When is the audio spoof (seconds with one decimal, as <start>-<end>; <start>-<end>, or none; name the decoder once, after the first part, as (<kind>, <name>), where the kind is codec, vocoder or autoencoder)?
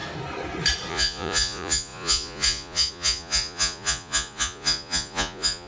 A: 0.9-5.7 (vocoder, Vocos)